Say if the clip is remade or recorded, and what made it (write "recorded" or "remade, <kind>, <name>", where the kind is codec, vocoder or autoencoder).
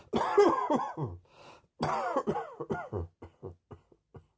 recorded